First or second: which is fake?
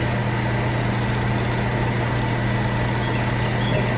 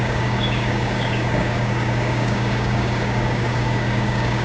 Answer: second